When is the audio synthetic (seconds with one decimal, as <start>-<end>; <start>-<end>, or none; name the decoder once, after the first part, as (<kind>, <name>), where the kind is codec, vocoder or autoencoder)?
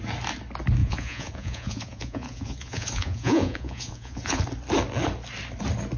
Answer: 0.8-4.4 (vocoder, Vocos)